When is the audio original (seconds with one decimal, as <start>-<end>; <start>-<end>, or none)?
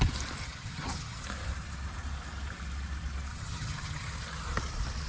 0.0-0.4; 1.2-3.3; 4.1-5.1